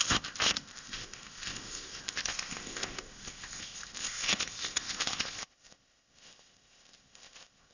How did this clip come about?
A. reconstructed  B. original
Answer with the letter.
A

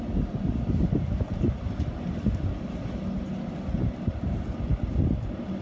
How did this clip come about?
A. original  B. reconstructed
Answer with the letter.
A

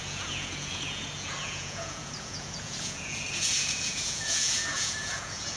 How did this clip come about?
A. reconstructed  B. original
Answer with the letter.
A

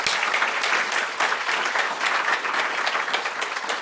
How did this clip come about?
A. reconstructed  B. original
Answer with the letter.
B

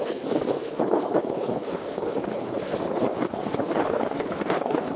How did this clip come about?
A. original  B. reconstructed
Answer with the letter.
B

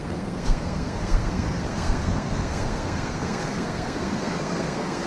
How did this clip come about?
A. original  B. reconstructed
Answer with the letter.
B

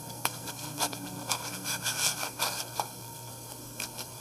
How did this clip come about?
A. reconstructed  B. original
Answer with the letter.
A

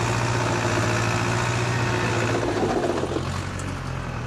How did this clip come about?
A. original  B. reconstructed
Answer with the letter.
A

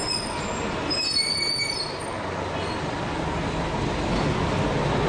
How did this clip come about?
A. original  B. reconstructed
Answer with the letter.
A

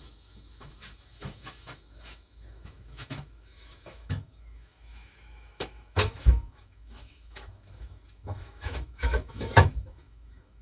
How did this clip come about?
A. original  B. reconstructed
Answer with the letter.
B